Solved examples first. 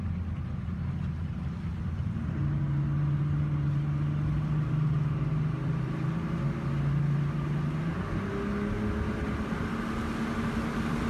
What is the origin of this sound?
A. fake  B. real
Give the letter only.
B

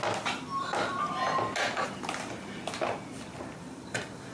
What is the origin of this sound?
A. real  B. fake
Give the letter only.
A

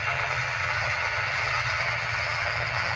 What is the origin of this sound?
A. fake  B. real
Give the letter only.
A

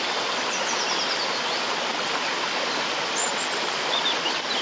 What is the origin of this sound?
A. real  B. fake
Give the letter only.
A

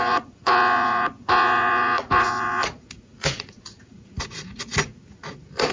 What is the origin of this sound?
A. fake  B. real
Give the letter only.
A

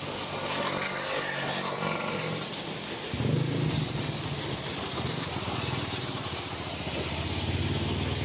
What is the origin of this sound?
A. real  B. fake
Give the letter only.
A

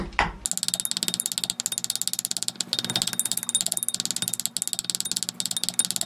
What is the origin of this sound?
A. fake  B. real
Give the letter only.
B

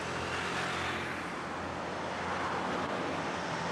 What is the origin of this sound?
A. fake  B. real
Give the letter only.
B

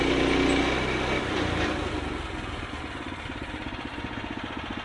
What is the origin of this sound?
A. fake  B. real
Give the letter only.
B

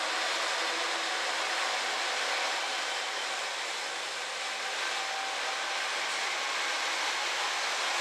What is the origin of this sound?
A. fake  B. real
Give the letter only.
B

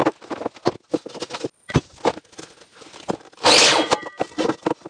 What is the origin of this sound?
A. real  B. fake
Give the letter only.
A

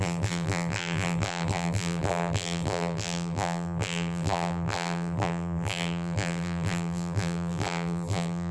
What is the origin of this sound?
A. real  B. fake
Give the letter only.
B